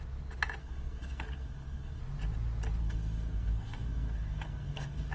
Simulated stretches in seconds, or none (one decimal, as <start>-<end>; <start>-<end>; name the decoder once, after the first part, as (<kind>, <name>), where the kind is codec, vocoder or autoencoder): 0.6-2.0 (codec, SNAC); 2.8-5.1